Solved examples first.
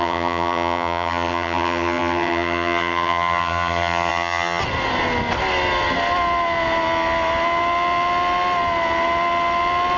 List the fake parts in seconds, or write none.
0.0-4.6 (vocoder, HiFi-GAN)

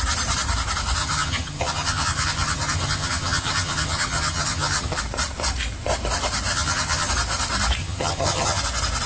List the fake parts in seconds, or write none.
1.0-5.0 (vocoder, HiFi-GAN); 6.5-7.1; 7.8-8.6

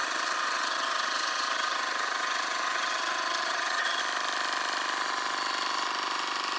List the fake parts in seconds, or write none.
0.0-4.0 (vocoder, HiFi-GAN)